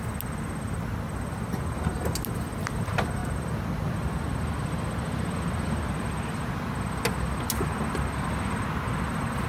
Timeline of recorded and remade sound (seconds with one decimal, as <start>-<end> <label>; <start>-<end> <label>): 0.0-9.5 recorded